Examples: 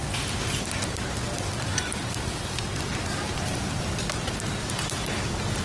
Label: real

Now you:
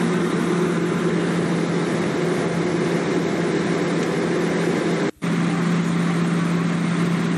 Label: real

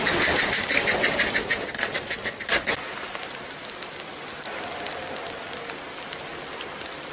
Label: real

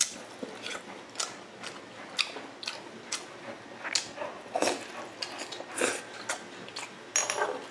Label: real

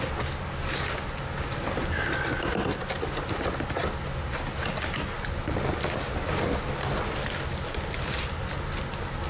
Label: real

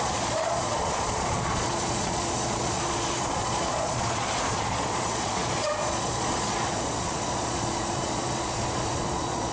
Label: fake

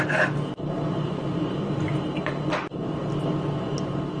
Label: real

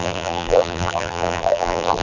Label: fake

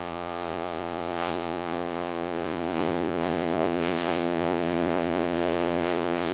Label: fake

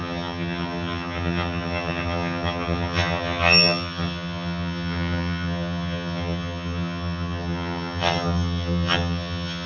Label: fake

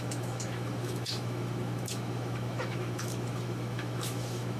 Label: fake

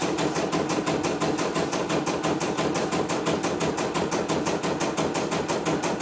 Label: real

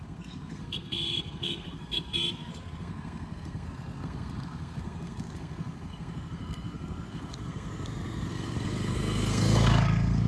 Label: fake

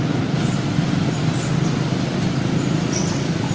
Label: real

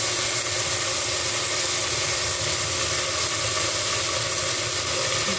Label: real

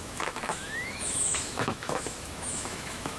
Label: fake